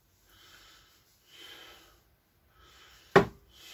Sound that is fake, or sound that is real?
real